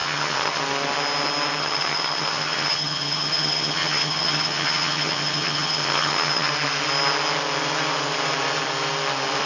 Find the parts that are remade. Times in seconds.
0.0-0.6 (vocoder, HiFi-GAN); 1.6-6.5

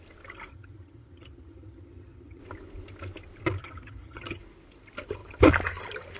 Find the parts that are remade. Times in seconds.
0.5-2.4 (vocoder, HiFi-GAN); 3.6-4.4

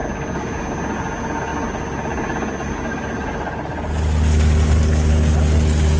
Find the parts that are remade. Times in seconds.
none

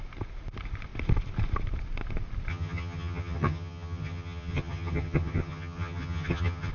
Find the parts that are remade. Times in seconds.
2.5-6.7 (vocoder, HiFi-GAN)

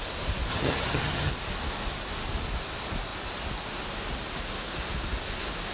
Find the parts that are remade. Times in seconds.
0.5-1.3 (vocoder, HiFi-GAN)

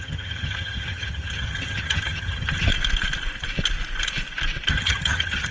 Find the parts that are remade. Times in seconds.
0.0-2.7 (vocoder, HiFi-GAN); 4.7-5.5